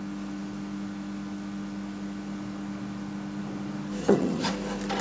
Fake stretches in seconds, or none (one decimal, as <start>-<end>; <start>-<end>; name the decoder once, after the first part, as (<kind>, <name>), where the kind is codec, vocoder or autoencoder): 4.0-4.5 (vocoder, HiFi-GAN)

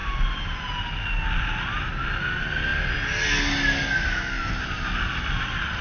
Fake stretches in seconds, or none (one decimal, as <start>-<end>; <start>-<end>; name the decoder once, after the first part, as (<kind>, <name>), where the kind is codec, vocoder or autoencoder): none

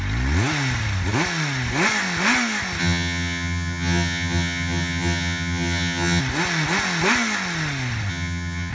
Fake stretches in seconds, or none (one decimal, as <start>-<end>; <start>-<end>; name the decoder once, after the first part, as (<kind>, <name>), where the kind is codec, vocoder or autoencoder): 2.8-6.2 (vocoder, HiFi-GAN); 8.1-8.7